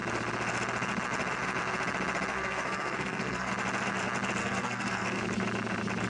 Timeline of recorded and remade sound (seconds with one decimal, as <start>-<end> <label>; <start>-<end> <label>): 0.0-2.3 recorded; 2.3-3.5 remade; 3.5-4.4 recorded; 4.4-5.2 remade; 5.2-6.1 recorded